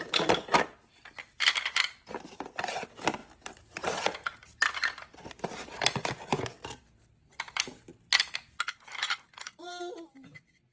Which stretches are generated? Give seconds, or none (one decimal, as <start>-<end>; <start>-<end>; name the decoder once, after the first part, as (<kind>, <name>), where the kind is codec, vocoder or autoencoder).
none

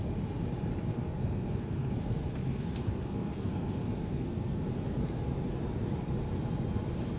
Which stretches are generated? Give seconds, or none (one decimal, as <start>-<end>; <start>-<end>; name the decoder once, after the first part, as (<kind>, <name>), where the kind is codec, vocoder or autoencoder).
0.9-5.2 (codec, SNAC)

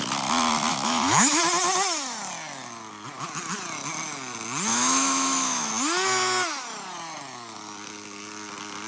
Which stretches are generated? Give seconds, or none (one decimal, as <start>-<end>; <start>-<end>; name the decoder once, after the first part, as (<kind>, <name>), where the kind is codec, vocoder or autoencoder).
0.7-1.4 (autoencoder, DAC-VAE); 4.7-5.7

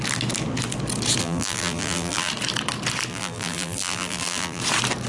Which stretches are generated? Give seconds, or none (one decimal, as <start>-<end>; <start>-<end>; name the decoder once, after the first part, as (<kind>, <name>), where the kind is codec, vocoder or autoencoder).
1.2-2.3 (vocoder, BigVGAN v2); 3.1-4.6

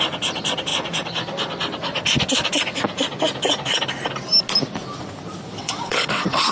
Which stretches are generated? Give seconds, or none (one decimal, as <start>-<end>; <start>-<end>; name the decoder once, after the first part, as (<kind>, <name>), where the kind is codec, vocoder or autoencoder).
5.6-6.5 (vocoder, WaveNeXt)

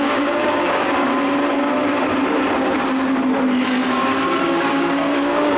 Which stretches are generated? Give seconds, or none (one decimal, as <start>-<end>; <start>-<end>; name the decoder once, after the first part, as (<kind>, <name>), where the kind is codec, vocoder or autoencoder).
0.0-1.0 (codec, DAC); 4.4-5.6